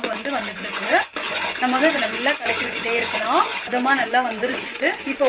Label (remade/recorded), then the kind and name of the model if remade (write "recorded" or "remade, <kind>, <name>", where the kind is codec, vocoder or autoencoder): remade, vocoder, Vocos